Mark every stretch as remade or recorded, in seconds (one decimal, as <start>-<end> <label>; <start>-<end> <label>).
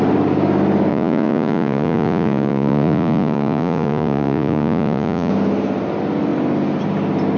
0.0-0.9 recorded; 0.9-5.3 remade; 5.3-7.4 recorded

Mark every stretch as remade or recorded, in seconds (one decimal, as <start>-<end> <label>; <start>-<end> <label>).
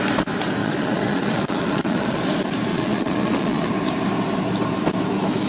0.0-0.6 recorded; 0.6-2.2 remade; 2.2-2.7 recorded; 2.7-3.7 remade; 3.7-5.5 recorded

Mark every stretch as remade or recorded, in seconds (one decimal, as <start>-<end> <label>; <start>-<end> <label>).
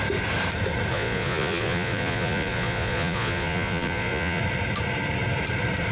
0.0-0.9 recorded; 0.9-4.4 remade; 4.4-5.9 recorded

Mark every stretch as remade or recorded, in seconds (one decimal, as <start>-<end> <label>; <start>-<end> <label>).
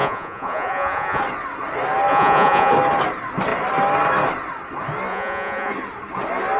0.0-1.2 remade; 1.2-2.1 recorded; 2.1-2.7 remade; 2.7-5.1 recorded; 5.1-5.7 remade; 5.7-6.6 recorded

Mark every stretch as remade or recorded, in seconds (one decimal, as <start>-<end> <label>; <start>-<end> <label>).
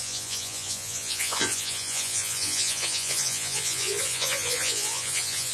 0.0-5.5 remade